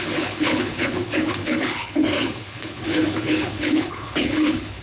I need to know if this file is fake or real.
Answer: fake